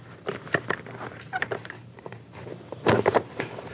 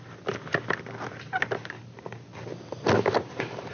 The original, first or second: second